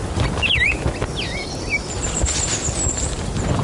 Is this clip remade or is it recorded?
recorded